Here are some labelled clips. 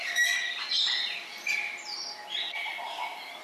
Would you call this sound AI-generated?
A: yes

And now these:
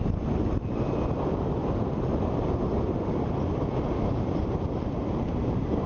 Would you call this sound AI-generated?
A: no